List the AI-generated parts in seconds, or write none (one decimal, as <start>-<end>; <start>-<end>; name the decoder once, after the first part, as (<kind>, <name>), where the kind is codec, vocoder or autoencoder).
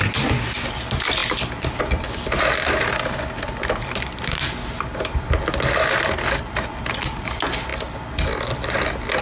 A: none